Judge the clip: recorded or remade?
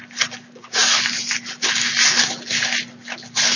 recorded